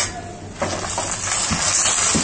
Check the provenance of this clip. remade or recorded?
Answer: recorded